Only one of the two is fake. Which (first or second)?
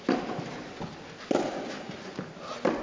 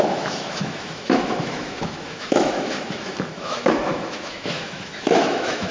second